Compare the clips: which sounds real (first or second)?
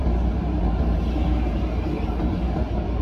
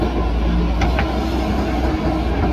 second